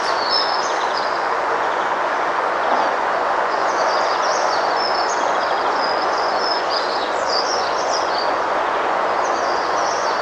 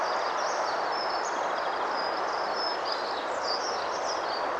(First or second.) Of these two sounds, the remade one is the first